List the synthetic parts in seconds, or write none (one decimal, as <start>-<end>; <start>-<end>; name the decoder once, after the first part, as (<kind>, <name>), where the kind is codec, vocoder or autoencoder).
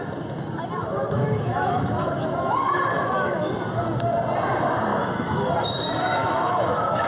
0.8-3.5 (autoencoder, DAC-VAE); 4.9-5.5; 6.2-7.1